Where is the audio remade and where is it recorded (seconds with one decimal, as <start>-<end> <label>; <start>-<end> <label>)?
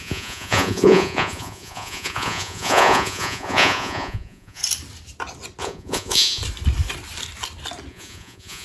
0.0-4.6 remade; 4.6-5.6 recorded; 5.6-6.4 remade; 6.4-7.9 recorded; 7.9-8.6 remade